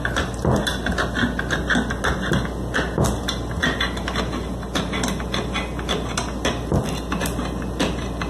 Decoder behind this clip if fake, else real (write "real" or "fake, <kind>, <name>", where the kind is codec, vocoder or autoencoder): real